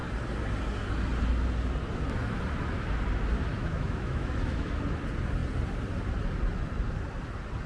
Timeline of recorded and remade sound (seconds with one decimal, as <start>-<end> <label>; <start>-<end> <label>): 0.0-3.5 recorded; 3.5-4.8 remade; 4.8-7.7 recorded